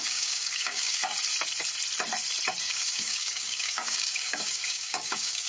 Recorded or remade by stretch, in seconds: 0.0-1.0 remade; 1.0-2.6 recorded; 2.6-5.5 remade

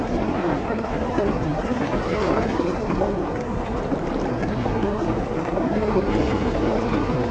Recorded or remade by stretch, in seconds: 0.0-3.8 remade; 3.8-4.3 recorded; 4.3-7.3 remade